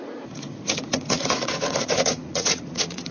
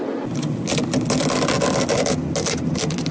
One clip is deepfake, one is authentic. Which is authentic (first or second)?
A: second